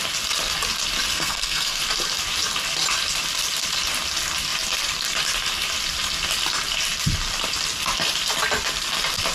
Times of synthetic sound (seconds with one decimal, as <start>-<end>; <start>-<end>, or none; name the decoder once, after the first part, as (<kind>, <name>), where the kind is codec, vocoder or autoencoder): 1.1-1.8 (codec, SNAC)